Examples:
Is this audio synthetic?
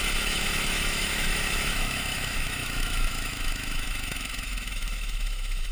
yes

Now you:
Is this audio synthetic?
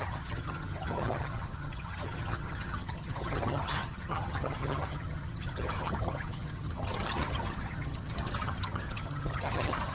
yes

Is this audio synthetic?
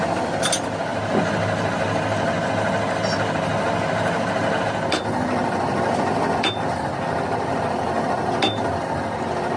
no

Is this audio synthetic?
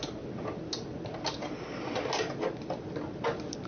no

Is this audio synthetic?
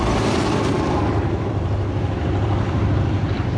yes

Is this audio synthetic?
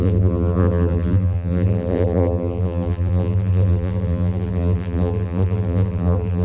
yes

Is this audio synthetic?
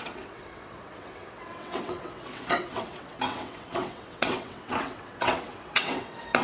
yes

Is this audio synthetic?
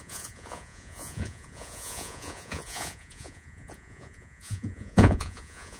yes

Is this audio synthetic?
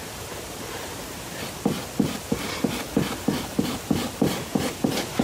no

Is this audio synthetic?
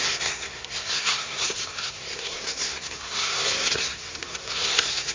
yes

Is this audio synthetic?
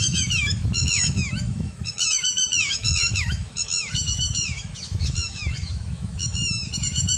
yes